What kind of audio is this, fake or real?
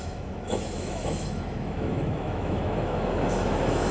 fake